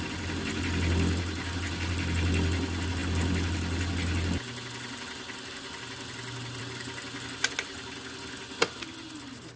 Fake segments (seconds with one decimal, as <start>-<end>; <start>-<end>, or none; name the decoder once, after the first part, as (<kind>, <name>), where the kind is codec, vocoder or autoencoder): none